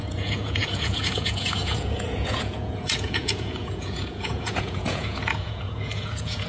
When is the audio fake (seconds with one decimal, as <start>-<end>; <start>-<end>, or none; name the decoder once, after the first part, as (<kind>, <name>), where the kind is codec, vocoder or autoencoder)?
0.0-6.5 (vocoder, Vocos)